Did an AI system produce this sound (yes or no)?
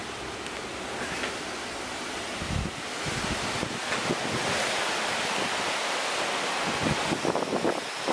no